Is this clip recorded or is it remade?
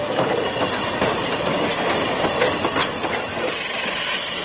recorded